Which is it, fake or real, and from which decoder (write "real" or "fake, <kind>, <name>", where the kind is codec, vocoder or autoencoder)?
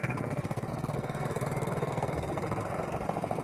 fake, codec, SNAC